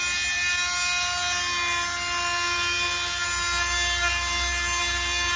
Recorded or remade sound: recorded